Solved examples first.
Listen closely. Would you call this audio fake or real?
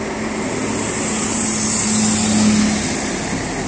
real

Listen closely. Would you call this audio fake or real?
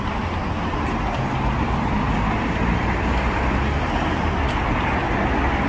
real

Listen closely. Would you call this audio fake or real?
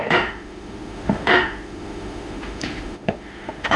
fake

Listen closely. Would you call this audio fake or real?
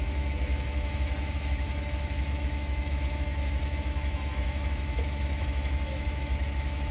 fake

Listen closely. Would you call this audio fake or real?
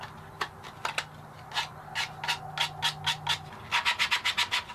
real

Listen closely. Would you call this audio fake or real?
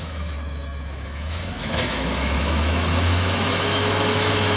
fake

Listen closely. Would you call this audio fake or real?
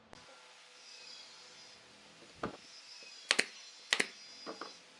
real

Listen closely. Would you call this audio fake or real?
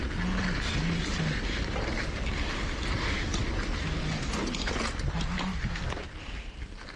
real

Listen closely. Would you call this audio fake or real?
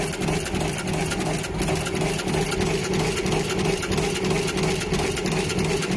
real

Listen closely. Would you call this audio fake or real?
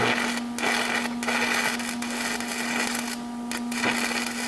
real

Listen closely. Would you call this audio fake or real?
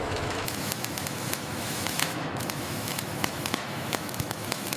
fake